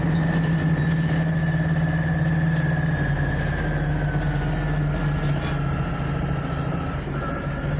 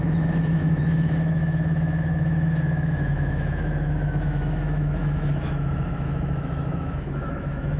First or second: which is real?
first